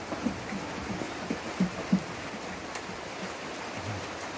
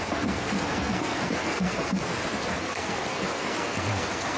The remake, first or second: second